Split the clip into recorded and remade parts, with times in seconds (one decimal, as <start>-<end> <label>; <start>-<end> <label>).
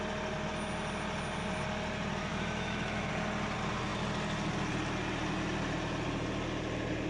0.0-2.3 recorded; 2.3-3.1 remade; 3.1-7.1 recorded